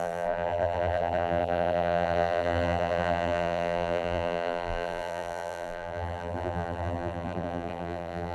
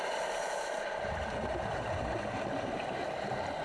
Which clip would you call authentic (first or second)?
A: second